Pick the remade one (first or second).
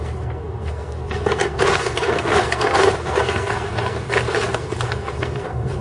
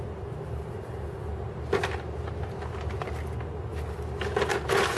first